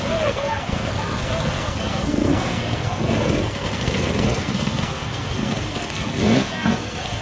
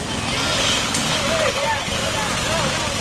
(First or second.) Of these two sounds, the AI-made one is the first